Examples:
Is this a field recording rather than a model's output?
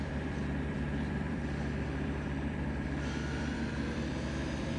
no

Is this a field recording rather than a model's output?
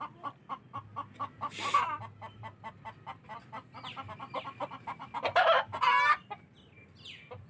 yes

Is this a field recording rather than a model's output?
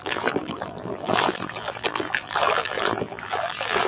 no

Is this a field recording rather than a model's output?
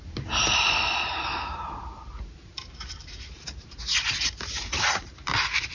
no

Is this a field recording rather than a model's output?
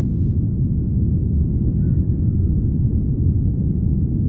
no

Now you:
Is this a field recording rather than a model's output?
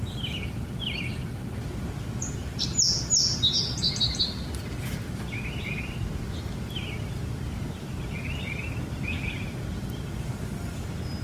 yes